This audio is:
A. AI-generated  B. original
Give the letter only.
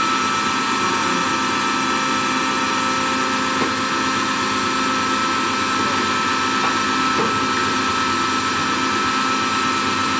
B